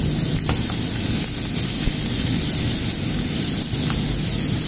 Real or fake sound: real